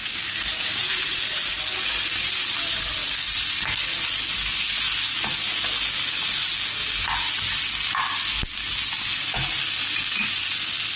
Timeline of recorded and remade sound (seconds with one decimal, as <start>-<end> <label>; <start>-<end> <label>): 0.0-1.4 remade; 1.4-11.0 recorded